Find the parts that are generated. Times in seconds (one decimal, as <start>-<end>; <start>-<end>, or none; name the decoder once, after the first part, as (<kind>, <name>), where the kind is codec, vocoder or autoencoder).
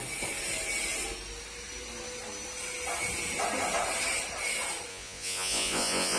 4.9-6.2 (vocoder, Vocos)